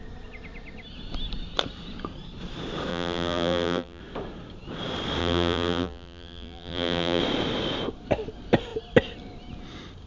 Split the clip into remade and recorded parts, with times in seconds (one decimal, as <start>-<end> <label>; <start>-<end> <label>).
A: 0.0-2.9 recorded; 2.9-4.0 remade; 4.0-5.2 recorded; 5.2-7.2 remade; 7.2-10.1 recorded